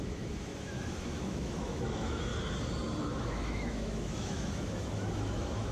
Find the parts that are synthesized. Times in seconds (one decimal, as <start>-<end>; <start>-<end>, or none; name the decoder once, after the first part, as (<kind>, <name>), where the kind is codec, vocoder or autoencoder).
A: 0.0-2.3 (autoencoder, DAC-VAE); 3.0-5.7